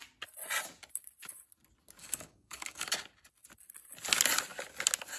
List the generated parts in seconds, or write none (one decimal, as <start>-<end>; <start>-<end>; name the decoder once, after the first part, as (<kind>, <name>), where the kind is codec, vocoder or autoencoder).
2.0-2.9 (codec, DAC)